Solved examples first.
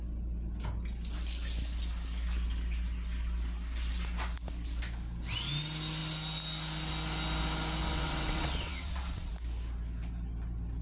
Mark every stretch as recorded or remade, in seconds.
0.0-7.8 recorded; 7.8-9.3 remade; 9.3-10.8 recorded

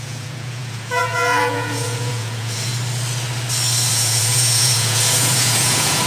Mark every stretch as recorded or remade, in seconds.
0.0-2.7 remade; 2.7-3.9 recorded; 3.9-6.1 remade

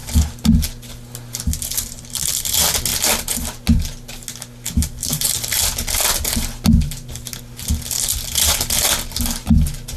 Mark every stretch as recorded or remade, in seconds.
0.0-10.0 recorded